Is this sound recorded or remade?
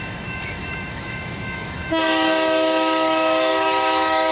remade